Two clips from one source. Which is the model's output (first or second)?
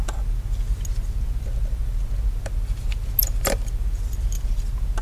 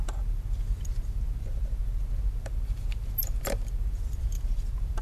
second